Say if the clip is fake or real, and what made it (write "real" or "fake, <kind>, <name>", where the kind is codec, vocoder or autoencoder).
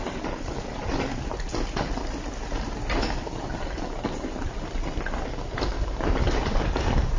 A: real